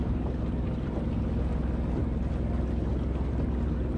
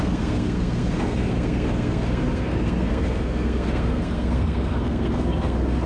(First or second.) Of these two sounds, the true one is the first